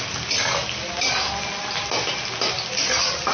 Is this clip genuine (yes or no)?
yes